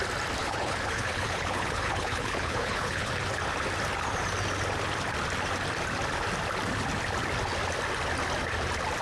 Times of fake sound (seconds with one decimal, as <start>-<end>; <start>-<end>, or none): 0.4-3.1

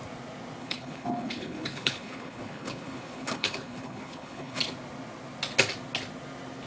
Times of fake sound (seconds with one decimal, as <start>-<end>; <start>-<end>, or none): 0.6-4.6

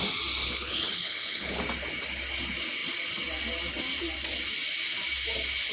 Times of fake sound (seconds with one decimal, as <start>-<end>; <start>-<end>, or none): 0.4-1.6